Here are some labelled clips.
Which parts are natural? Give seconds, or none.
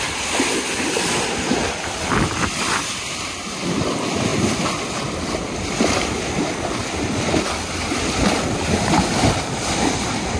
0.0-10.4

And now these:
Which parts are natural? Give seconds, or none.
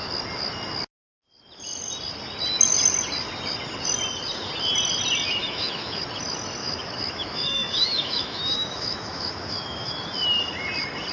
0.0-5.4; 6.0-6.6; 9.9-11.1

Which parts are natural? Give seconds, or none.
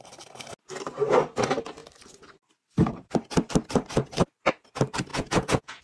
0.0-5.1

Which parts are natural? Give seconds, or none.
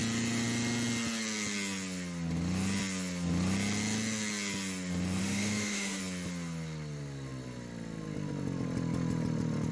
0.0-5.2; 6.0-9.7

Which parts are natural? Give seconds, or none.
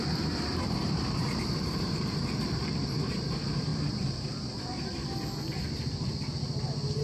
3.7-7.0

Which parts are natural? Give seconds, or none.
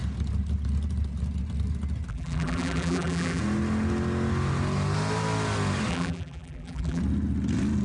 0.0-2.1; 3.4-5.9; 7.0-7.8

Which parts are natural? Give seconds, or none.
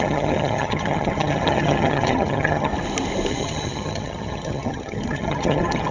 2.7-3.3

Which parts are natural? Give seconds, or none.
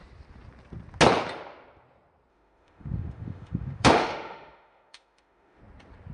0.0-2.3; 5.6-6.1